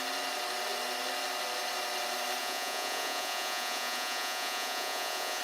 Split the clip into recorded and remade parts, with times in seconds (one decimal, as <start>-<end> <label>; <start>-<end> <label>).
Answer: 0.0-2.4 recorded; 2.4-5.4 remade